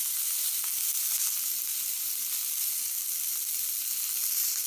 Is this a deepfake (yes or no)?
no